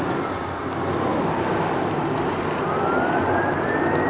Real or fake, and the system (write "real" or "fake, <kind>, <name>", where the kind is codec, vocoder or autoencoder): real